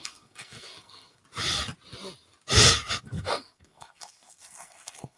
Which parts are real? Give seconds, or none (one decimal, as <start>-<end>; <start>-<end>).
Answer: 1.2-2.9